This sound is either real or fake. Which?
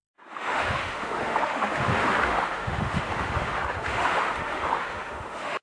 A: fake